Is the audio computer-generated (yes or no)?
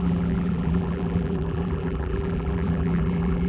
yes